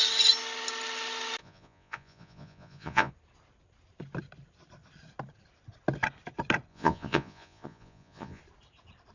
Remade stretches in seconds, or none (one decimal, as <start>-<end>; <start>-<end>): 1.4-3.1; 6.7-8.4